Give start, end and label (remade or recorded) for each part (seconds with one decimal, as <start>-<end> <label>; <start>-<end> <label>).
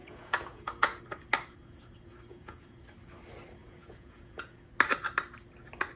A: 0.0-1.0 remade; 1.0-2.3 recorded; 2.3-2.8 remade; 2.8-3.6 recorded; 3.6-4.7 remade; 4.7-6.0 recorded